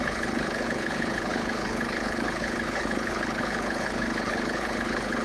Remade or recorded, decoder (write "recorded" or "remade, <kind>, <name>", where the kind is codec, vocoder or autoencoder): remade, codec, HILCodec